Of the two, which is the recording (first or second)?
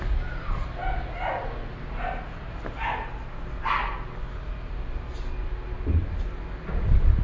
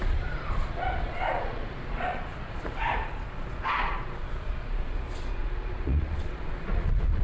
first